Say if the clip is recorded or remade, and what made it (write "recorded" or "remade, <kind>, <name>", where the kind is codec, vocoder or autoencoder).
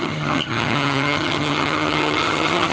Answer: remade, vocoder, HiFi-GAN